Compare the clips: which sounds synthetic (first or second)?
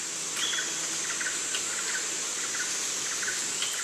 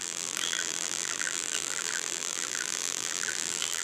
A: second